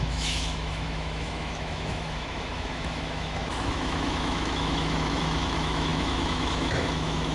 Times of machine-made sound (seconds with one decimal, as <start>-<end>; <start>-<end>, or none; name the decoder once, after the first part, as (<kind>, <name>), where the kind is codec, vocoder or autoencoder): 0.0-7.3 (autoencoder, DAC-VAE)